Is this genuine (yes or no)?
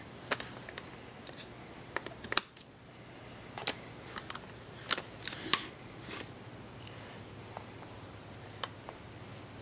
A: yes